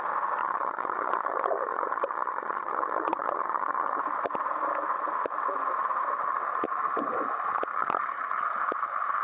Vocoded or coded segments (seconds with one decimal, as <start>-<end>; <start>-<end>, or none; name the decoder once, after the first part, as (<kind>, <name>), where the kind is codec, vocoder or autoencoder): 0.4-4.0 (vocoder, HiFi-GAN); 7.7-8.4